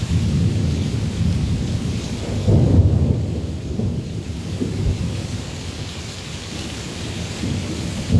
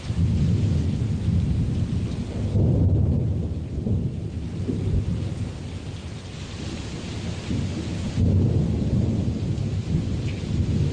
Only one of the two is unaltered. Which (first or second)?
second